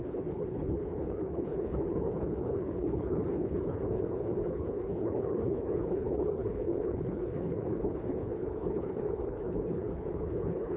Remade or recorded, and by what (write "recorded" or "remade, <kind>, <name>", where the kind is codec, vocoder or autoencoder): remade, codec, HILCodec